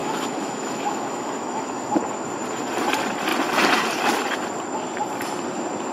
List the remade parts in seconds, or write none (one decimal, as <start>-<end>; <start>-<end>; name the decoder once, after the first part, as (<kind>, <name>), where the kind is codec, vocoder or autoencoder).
0.0-1.9 (autoencoder, DAC-VAE)